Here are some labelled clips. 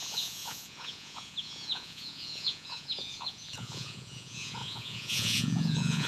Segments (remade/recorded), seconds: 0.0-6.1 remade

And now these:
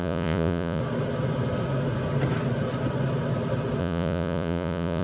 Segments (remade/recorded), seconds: 0.0-0.8 remade; 0.8-3.8 recorded; 3.8-5.0 remade

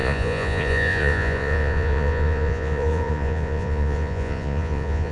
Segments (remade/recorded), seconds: 0.0-5.1 remade

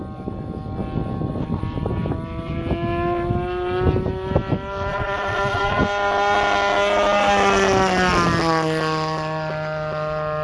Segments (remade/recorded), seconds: 0.0-4.9 recorded; 4.9-5.8 remade; 5.8-10.4 recorded